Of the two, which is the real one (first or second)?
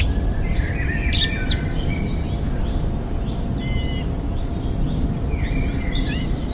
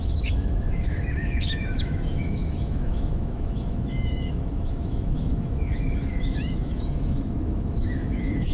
first